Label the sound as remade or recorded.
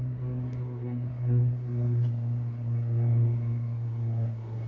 remade